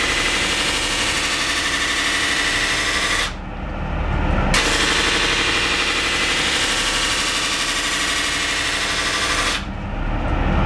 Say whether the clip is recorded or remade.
recorded